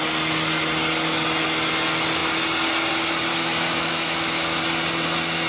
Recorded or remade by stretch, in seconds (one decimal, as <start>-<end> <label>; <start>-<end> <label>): 0.0-3.3 recorded; 3.3-4.6 remade; 4.6-5.5 recorded